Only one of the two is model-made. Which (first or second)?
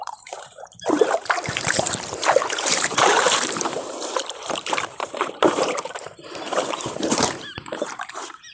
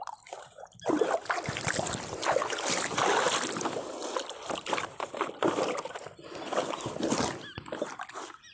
first